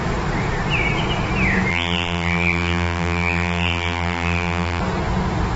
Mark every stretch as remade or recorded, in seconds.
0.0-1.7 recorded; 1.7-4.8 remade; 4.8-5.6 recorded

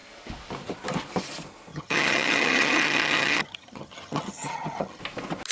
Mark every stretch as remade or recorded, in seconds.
0.0-1.7 recorded; 1.7-5.0 remade; 5.0-5.5 recorded

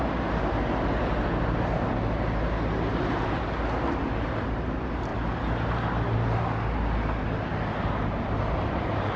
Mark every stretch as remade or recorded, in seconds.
0.0-9.2 recorded

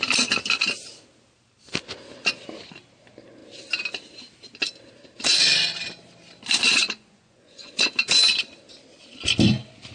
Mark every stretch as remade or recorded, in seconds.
0.0-6.7 recorded; 6.7-7.8 remade; 7.8-9.9 recorded

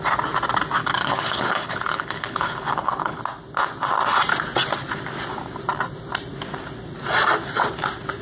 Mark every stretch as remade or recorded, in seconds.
0.0-0.8 recorded; 0.8-3.2 remade; 3.2-8.2 recorded

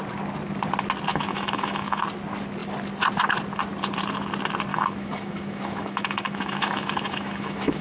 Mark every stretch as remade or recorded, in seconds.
0.0-1.1 recorded; 1.1-2.0 remade; 2.0-4.7 recorded; 4.7-7.8 remade